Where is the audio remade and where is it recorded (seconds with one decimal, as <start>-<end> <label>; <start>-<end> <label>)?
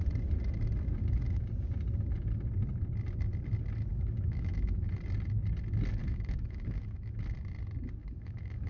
0.0-3.9 recorded; 3.9-4.9 remade; 4.9-6.0 recorded; 6.0-7.2 remade; 7.2-8.0 recorded; 8.0-8.7 remade